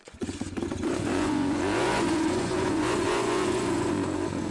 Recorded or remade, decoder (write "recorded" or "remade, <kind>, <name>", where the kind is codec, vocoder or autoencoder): remade, vocoder, Vocos